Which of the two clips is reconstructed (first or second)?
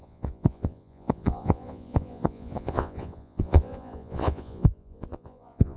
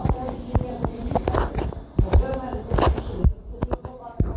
first